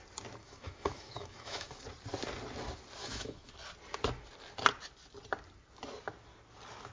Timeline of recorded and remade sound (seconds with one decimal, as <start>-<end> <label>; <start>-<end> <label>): 0.0-0.4 recorded; 0.4-1.8 remade; 1.8-3.0 recorded; 3.0-3.5 remade; 3.5-6.9 recorded